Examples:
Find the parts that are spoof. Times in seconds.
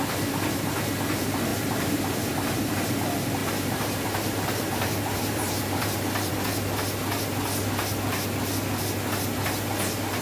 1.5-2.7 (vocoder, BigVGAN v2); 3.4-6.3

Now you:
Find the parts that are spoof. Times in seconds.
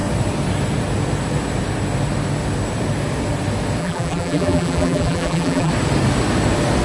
3.8-5.7 (vocoder, BigVGAN v2)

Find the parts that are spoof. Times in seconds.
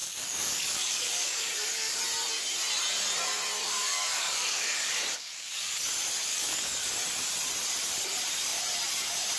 0.0-2.0 (codec, DAC); 3.6-5.8; 6.3-6.9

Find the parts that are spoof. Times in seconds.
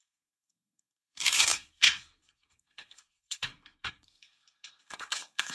0.0-5.5 (codec, SNAC)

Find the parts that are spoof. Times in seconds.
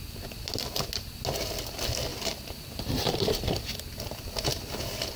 2.1-3.3 (vocoder, BigVGAN v2)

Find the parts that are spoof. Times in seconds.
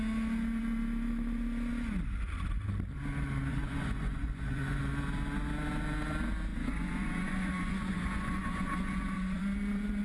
3.5-4.8 (vocoder, Vocos); 6.5-9.4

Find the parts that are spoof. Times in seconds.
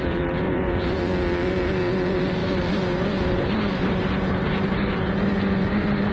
0.0-1.0 (vocoder, BigVGAN v2); 2.4-6.1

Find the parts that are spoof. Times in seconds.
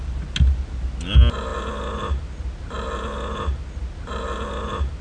none